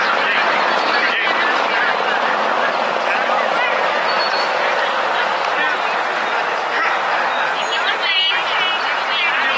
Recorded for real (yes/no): yes